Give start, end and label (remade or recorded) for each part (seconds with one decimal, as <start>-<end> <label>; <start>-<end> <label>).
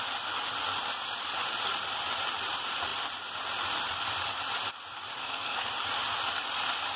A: 0.0-5.2 recorded; 5.2-5.7 remade; 5.7-7.0 recorded